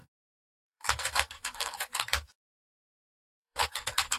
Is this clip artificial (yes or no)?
yes